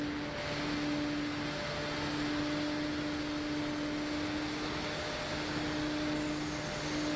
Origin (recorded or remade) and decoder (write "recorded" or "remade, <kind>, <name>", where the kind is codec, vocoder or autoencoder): recorded